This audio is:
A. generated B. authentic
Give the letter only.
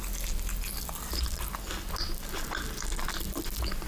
B